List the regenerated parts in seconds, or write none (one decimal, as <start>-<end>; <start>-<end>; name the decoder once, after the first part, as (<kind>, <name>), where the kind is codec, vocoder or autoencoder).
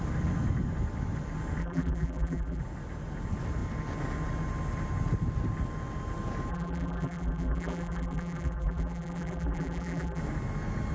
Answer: 1.6-2.6 (vocoder, BigVGAN v2); 6.5-10.2